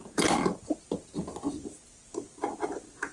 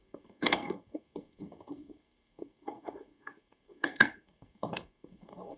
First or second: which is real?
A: first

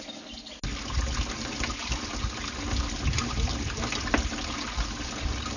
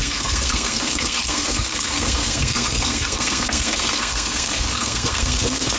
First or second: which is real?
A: first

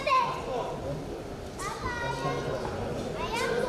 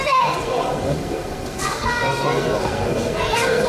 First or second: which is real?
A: first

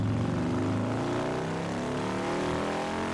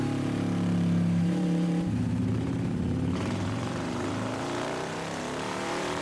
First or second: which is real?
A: first